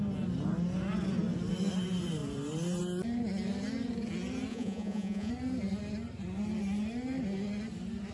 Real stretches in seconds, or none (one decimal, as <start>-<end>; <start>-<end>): 0.0-4.5; 5.3-8.1